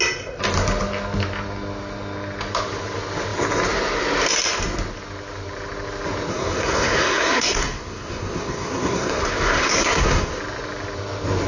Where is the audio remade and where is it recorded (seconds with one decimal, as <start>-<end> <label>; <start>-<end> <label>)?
0.0-6.3 recorded; 6.3-10.4 remade; 10.4-11.5 recorded